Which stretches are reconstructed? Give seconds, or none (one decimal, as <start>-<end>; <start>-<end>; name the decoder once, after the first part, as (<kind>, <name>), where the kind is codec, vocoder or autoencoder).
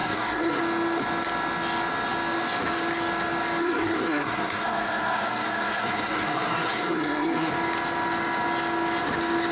0.0-0.6 (codec, SNAC); 3.6-7.5